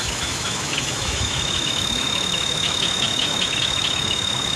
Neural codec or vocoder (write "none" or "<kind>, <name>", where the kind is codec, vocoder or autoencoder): autoencoder, DAC-VAE